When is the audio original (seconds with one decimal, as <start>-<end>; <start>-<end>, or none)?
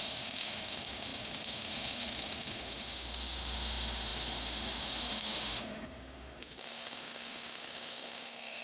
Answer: none